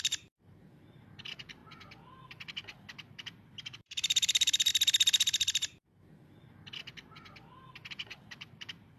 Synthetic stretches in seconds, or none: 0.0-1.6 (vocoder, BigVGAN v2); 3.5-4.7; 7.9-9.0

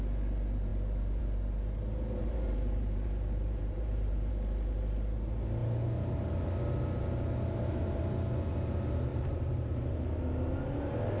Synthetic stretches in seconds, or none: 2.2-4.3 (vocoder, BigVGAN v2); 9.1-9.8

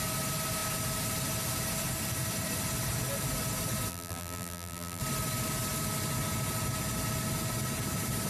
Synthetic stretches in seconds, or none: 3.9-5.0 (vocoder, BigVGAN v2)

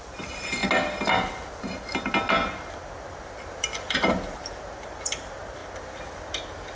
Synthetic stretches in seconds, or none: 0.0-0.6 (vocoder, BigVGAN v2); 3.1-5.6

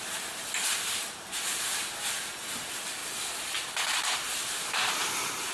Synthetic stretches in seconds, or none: 0.0-3.0 (vocoder, BigVGAN v2); 4.0-5.5